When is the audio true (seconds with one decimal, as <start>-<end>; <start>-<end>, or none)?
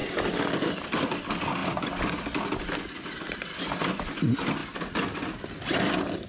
0.0-6.3